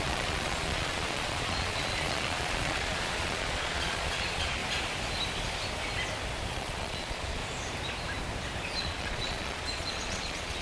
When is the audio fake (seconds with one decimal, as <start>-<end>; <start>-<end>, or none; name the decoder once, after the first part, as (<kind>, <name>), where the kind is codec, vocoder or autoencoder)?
0.0-4.6 (vocoder, Vocos); 6.5-7.4; 8.8-10.6